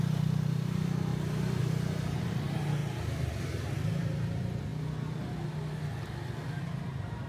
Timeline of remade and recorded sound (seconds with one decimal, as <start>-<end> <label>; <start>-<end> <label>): 0.0-1.1 remade; 1.1-1.6 recorded; 1.6-2.8 remade; 2.8-3.4 recorded; 3.4-4.7 remade; 4.7-6.6 recorded; 6.6-7.3 remade